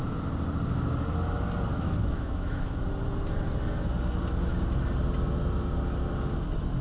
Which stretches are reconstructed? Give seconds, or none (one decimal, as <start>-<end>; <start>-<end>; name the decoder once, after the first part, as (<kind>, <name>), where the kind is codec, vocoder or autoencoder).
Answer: 1.7-2.9 (autoencoder, DAC-VAE)